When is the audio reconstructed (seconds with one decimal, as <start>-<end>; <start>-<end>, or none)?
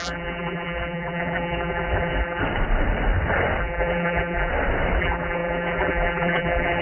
0.0-2.4; 3.6-4.5; 5.0-6.8